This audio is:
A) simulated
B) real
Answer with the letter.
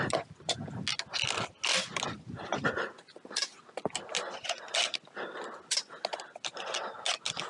B